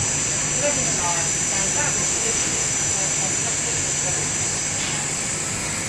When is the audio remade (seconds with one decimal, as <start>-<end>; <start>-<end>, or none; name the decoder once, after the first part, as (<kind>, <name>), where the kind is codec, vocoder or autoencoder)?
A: 2.1-2.7 (autoencoder, DAC-VAE)